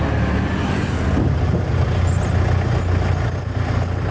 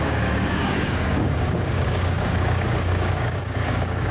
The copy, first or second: second